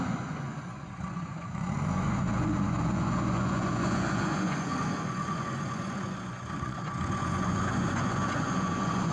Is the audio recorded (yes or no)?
no